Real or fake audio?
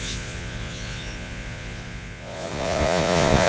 fake